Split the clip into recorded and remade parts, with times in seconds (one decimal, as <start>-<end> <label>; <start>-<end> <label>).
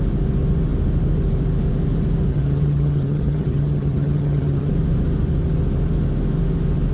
0.0-2.3 recorded; 2.3-4.7 remade; 4.7-6.9 recorded